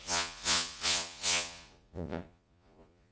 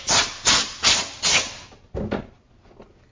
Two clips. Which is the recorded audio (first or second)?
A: second